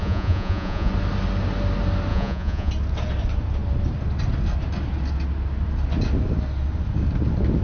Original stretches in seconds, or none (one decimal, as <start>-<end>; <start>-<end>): 0.9-2.1; 2.7-7.6